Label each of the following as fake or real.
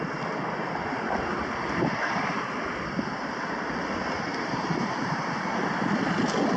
real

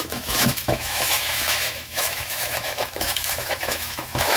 fake